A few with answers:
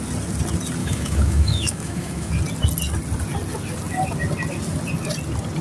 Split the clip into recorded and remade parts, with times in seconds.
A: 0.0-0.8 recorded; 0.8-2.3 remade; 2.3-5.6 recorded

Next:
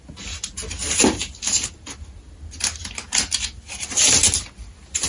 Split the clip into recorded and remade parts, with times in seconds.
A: 0.0-5.1 recorded

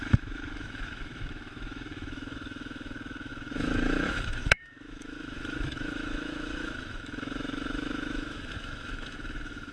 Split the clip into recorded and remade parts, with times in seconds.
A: 0.0-9.7 remade

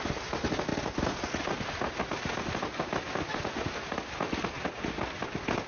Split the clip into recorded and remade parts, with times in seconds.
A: 0.0-5.7 recorded

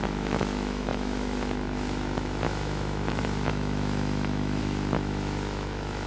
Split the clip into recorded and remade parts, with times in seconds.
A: 0.0-6.1 remade

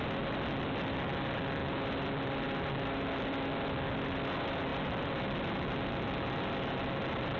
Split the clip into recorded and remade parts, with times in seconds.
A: 0.0-7.4 recorded

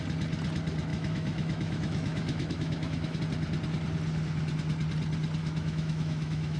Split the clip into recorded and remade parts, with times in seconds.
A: 0.0-0.9 recorded; 0.9-3.2 remade; 3.2-5.4 recorded; 5.4-6.6 remade